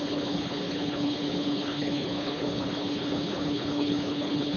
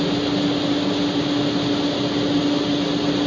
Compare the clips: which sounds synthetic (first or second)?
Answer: first